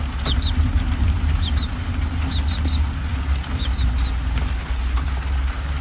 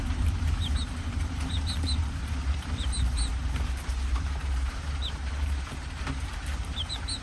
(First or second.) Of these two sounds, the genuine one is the first